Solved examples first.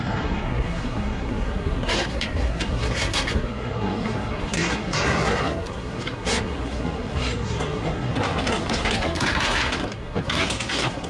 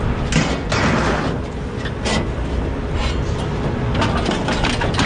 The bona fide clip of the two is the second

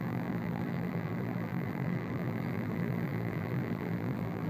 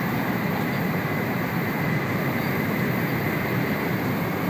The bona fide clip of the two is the second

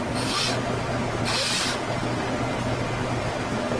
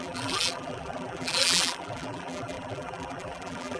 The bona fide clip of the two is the first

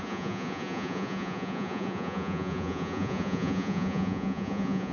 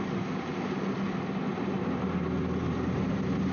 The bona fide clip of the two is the second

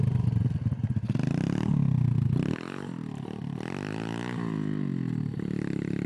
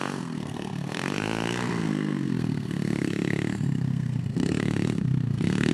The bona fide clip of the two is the first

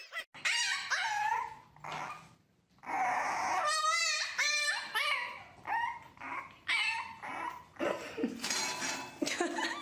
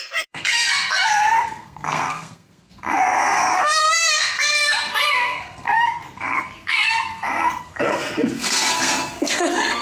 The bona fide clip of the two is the first